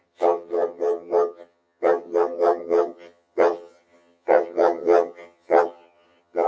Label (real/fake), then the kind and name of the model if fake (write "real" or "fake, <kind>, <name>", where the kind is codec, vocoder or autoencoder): fake, vocoder, HiFi-GAN